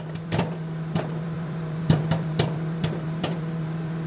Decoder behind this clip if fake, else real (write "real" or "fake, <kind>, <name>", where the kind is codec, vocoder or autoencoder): fake, vocoder, BigVGAN v2